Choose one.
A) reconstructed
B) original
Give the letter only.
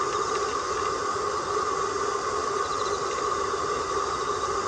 B